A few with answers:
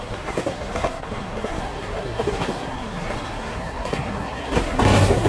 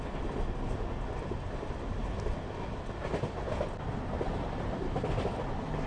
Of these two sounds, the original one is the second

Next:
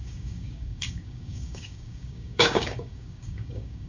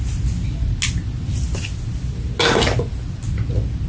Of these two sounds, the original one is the second